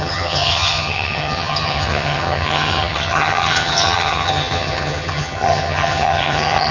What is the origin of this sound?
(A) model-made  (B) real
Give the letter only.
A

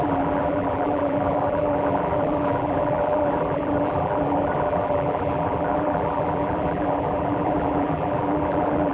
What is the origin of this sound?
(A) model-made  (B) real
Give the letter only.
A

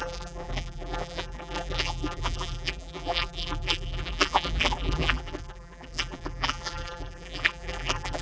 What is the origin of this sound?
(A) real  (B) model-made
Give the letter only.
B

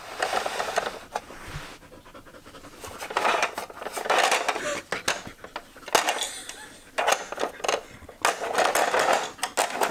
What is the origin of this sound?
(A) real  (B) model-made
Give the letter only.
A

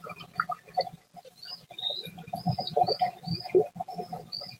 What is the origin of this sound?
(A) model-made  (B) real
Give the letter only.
B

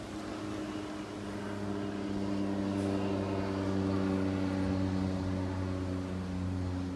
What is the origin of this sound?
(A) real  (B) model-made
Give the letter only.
A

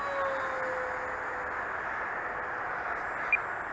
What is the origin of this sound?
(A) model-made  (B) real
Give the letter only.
B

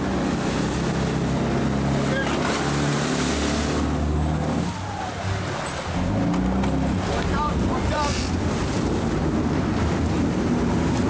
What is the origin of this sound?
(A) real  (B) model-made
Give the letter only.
A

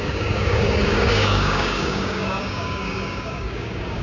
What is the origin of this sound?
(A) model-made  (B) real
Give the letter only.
A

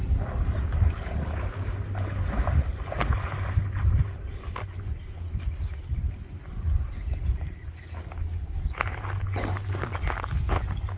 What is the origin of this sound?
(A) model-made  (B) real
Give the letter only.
B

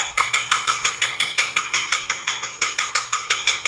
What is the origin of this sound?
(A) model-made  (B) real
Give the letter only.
A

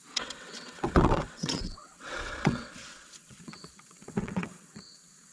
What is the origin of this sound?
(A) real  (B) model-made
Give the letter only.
B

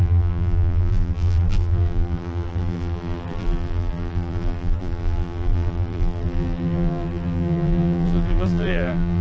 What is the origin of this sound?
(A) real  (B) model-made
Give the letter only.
B